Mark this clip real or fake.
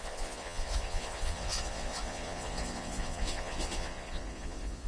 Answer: fake